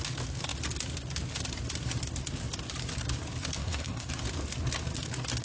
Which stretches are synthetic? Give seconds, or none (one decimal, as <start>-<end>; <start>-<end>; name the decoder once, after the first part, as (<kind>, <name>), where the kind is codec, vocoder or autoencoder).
3.6-4.1 (codec, SNAC)